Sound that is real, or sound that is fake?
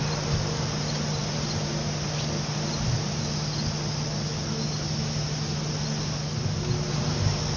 real